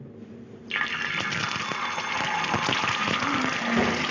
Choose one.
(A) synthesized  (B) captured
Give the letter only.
B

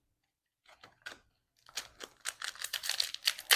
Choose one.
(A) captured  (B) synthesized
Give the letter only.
A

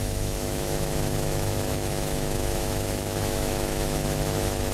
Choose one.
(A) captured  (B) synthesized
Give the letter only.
B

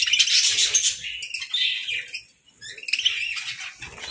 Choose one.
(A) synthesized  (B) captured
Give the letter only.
B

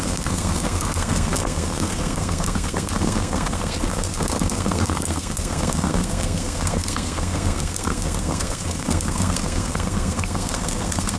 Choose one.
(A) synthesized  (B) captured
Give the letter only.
A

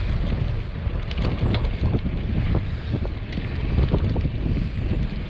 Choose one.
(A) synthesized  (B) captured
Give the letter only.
B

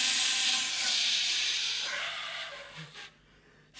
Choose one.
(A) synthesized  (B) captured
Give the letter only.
B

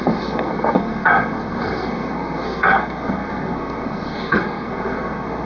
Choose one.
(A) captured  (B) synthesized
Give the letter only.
B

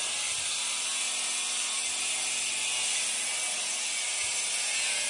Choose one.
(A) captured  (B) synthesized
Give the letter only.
A